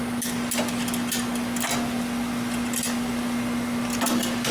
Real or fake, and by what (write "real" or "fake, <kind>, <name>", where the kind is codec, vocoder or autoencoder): real